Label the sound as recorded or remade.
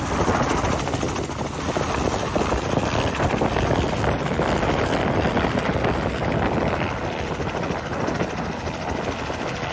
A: recorded